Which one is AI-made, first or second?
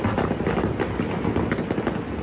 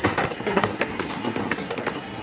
second